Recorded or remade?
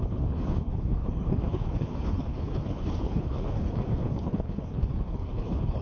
remade